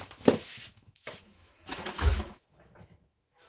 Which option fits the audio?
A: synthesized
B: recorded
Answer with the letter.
A